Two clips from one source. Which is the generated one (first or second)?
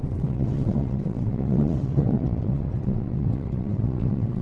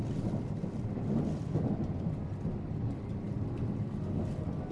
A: first